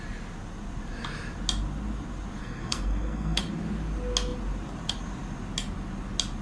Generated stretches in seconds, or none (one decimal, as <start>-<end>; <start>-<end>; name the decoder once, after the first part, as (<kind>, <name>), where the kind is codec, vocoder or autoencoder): 2.4-3.4 (codec, SNAC)

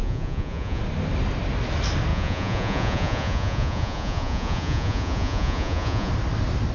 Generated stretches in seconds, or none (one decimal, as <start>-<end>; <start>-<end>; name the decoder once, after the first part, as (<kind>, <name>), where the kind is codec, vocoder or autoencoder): 0.0-0.8 (vocoder, Vocos); 2.1-6.1

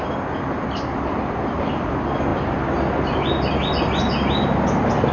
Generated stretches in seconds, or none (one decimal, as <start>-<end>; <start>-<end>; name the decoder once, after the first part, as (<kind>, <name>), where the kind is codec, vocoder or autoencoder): none

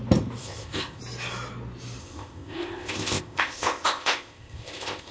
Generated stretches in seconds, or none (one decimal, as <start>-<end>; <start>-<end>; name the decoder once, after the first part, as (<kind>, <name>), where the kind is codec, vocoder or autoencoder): 0.4-1.0 (codec, ZipCodec); 2.0-5.1